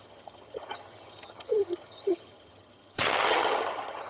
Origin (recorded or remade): remade